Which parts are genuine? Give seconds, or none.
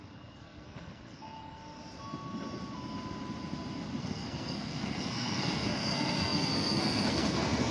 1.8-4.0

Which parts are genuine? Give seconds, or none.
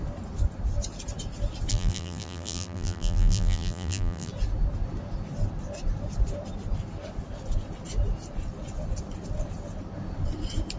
0.0-1.7; 4.3-10.8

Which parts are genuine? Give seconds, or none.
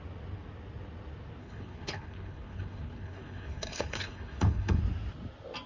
0.0-1.4; 4.8-5.7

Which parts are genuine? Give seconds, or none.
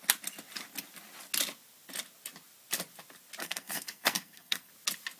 0.0-3.4; 4.7-5.2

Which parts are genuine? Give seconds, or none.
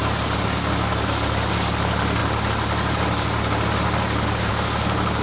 0.0-5.2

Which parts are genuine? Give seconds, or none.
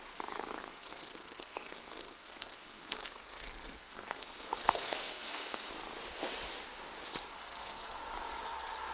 0.0-0.6; 5.7-7.3; 8.0-8.9